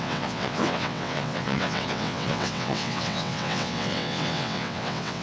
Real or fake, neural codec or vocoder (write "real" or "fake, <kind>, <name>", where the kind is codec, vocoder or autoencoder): fake, vocoder, WaveNeXt